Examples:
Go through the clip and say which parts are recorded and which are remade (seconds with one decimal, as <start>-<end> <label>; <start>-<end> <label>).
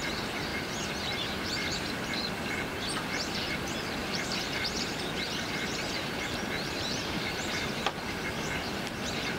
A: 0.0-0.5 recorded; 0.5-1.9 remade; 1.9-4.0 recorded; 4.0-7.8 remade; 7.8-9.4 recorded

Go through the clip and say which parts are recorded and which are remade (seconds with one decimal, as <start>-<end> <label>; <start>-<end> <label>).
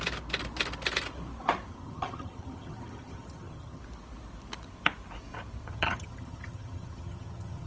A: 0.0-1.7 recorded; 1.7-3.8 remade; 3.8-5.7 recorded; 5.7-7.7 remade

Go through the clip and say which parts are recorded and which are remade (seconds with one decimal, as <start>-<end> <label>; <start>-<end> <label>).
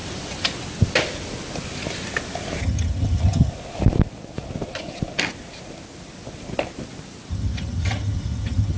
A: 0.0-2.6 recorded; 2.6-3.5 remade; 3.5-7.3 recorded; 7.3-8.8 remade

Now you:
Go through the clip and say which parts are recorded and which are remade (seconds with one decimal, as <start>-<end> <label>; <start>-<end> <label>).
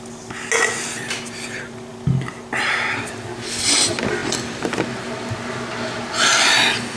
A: 0.0-7.0 recorded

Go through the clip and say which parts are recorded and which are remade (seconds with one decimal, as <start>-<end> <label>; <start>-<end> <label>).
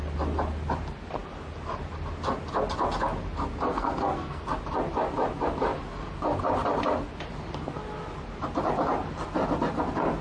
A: 0.0-3.7 recorded; 3.7-4.4 remade; 4.4-10.2 recorded